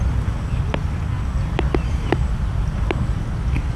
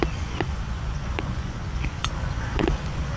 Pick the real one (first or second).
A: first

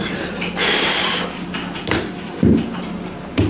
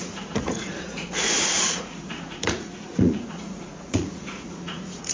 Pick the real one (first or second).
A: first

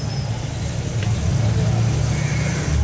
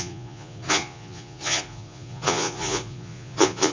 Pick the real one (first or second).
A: first